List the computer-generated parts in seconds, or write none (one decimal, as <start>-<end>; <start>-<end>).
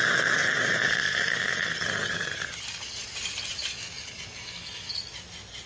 0.4-2.5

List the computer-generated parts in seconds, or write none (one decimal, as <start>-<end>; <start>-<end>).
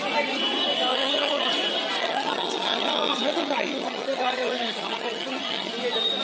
0.9-1.5; 2.0-5.7